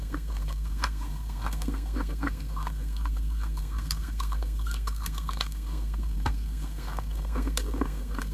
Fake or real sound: fake